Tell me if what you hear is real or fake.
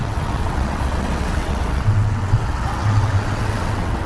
fake